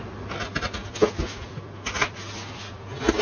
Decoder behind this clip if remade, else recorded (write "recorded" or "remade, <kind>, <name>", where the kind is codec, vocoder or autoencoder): recorded